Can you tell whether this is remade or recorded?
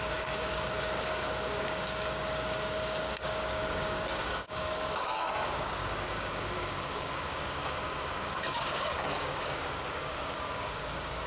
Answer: remade